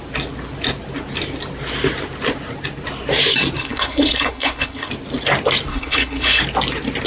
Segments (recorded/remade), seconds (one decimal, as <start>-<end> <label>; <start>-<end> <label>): 0.0-3.6 recorded; 3.6-4.9 remade; 4.9-5.7 recorded; 5.7-6.4 remade; 6.4-7.1 recorded